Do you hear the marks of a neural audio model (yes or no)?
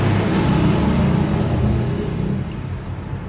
no